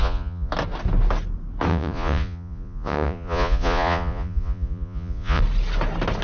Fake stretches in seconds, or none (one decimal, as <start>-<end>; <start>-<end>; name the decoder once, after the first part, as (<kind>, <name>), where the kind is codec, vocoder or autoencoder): 0.0-0.5 (vocoder, Vocos); 1.7-5.4